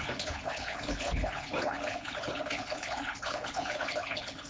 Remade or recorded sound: remade